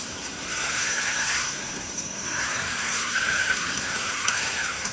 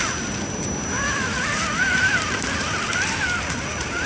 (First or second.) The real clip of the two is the second